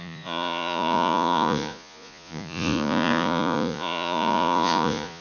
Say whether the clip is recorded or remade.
remade